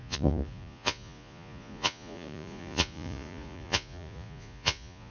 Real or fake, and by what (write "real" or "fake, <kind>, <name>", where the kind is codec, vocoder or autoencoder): fake, vocoder, Vocos